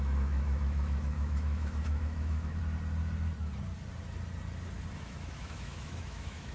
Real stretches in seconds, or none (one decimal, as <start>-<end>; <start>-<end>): 2.6-5.0